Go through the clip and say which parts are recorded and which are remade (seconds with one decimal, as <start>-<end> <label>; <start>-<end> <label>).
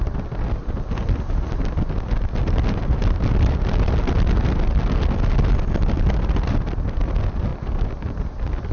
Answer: 0.0-8.7 recorded